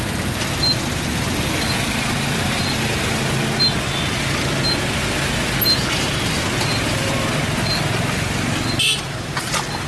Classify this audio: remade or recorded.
recorded